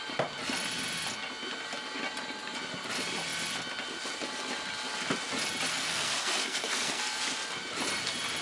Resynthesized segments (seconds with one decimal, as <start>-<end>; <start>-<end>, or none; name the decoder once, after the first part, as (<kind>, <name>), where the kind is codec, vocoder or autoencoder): 5.7-7.2 (codec, SNAC)